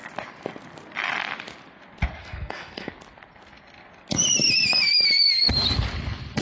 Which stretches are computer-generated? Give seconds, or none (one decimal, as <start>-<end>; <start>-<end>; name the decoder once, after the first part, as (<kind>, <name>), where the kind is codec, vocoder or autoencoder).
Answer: 2.2-2.9 (codec, SNAC)